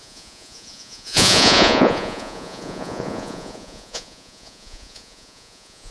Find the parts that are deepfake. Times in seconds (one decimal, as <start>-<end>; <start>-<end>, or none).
0.0-5.9